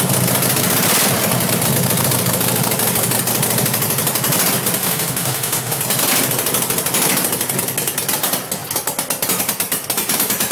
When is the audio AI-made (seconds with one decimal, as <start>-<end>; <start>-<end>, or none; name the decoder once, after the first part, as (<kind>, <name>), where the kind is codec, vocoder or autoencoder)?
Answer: 4.8-5.8 (autoencoder, DAC-VAE)